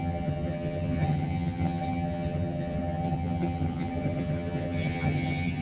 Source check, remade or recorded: remade